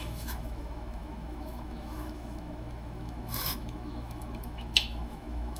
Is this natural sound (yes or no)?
no